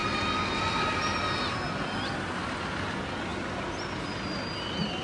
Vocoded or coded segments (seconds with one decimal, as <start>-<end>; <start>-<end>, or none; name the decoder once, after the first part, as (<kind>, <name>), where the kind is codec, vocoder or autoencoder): none